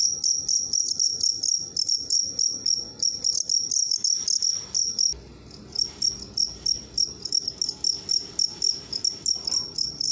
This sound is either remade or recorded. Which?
recorded